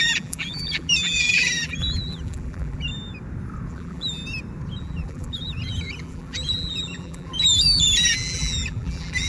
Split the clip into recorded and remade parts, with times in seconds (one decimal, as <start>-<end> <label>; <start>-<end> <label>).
0.0-2.9 remade; 2.9-3.7 recorded; 3.7-4.2 remade; 4.2-4.8 recorded; 4.8-9.3 remade